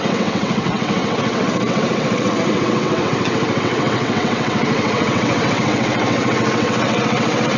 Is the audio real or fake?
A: fake